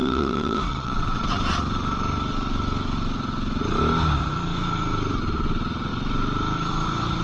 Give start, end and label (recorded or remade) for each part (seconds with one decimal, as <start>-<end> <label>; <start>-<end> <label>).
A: 0.0-1.4 remade; 1.4-7.2 recorded